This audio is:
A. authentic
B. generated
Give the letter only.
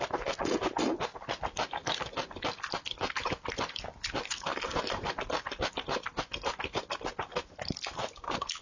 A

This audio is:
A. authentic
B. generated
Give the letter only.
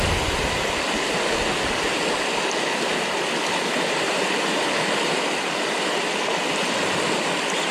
A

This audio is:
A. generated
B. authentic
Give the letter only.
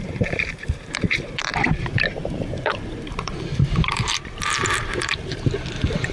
A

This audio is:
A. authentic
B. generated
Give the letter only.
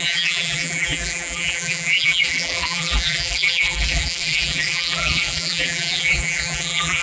B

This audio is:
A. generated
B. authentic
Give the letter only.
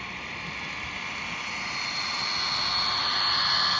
B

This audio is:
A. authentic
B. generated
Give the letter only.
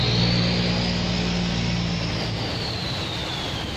A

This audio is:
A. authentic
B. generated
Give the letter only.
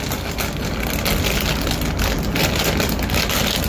A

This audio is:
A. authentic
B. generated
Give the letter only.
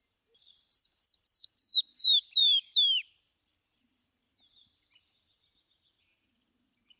B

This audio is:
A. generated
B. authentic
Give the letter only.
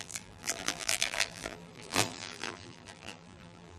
A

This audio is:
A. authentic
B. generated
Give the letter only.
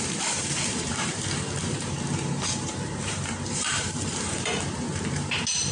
B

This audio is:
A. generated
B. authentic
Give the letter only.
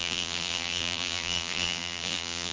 A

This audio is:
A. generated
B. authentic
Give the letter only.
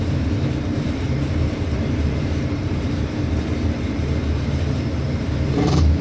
A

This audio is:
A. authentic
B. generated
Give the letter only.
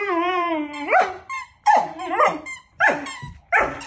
B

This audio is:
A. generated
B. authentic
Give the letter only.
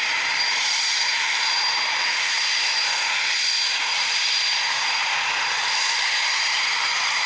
A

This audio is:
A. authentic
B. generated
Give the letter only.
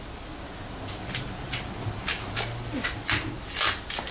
A